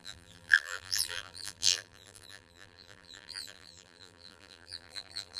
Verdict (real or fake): fake